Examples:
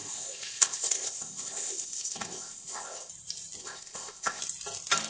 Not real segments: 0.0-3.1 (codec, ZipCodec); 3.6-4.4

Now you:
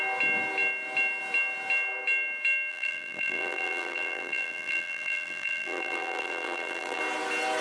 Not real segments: 2.7-7.0 (vocoder, BigVGAN v2)